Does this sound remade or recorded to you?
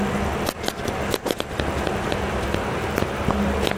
recorded